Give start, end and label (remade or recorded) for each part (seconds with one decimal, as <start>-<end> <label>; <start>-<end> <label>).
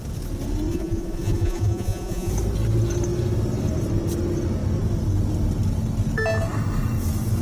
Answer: 0.0-0.7 recorded; 0.7-2.3 remade; 2.3-7.4 recorded